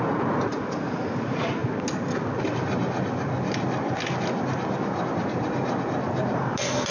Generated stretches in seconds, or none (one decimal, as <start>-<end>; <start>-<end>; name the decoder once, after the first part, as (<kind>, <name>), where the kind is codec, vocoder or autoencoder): none